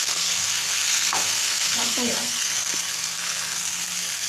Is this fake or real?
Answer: fake